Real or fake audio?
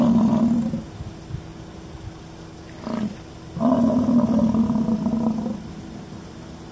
real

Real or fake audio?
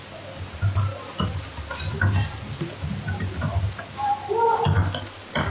real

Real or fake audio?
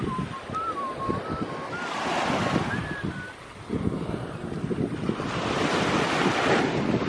real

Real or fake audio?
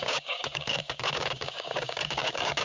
fake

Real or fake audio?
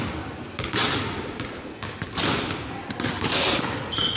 real